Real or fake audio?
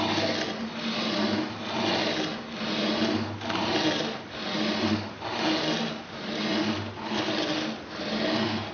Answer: real